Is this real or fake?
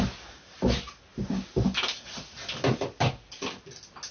real